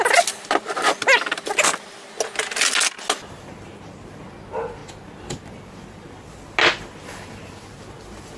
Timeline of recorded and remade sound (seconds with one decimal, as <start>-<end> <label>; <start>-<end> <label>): 0.0-8.4 recorded